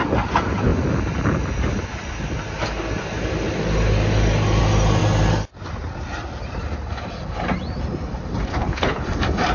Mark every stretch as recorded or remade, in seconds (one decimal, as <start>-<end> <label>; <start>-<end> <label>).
0.0-8.5 recorded; 8.5-9.0 remade; 9.0-9.5 recorded